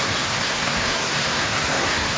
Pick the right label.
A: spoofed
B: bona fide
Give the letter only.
A